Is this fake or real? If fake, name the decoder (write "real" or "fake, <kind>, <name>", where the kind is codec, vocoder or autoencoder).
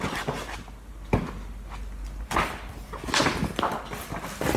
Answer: real